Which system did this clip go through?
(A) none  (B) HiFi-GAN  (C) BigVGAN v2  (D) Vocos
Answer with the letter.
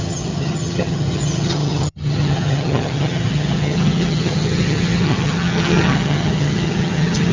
B